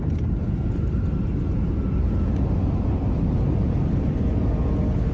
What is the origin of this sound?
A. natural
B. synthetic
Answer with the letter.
A